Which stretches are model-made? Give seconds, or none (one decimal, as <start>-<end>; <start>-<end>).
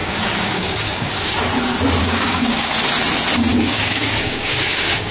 0.0-1.3; 2.0-2.7; 3.5-5.1